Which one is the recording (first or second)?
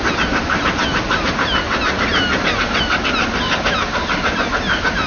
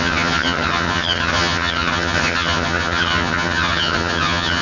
first